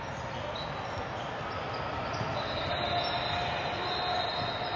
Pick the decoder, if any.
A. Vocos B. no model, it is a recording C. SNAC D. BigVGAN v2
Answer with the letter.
B